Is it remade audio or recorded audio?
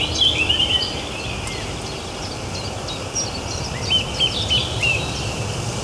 recorded